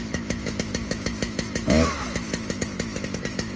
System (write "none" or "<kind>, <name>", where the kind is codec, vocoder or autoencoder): autoencoder, DAC-VAE